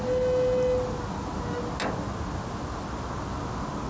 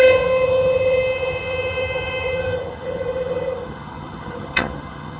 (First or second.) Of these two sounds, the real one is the first